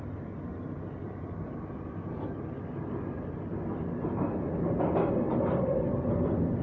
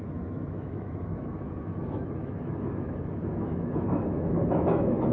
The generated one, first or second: second